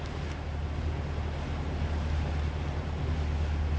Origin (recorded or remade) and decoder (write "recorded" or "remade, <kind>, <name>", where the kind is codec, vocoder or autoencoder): recorded